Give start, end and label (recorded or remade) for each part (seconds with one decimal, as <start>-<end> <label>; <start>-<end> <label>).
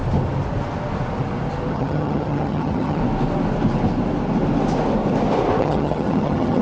0.0-1.7 recorded; 1.7-3.0 remade; 3.0-5.6 recorded; 5.6-6.6 remade